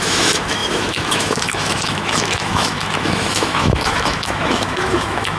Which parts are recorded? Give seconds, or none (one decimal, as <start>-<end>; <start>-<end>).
none